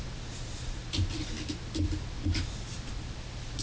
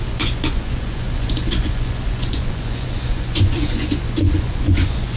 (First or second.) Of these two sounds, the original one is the first